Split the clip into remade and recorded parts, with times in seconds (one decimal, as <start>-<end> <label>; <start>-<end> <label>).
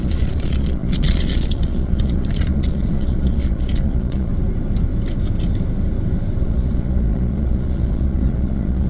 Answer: 0.0-4.3 remade; 4.3-6.4 recorded; 6.4-8.9 remade